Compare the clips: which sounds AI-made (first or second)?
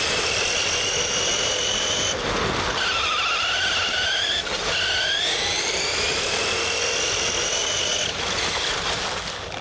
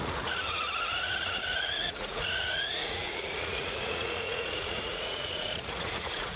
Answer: second